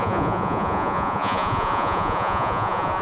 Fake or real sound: fake